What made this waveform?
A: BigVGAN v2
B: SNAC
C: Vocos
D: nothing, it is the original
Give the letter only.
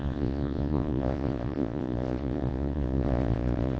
C